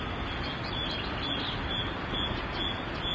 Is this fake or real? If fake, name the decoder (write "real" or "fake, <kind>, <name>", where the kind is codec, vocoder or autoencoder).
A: real